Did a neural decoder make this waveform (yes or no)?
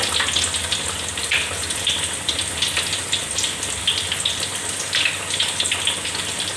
no